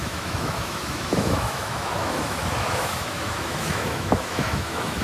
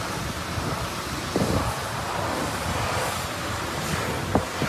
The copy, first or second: first